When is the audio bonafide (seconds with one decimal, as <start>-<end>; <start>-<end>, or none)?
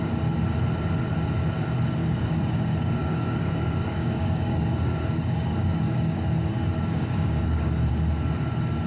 0.0-2.0; 2.6-3.0; 7.9-8.9